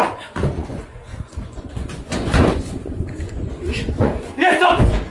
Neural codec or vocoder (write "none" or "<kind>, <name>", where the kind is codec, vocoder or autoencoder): vocoder, Vocos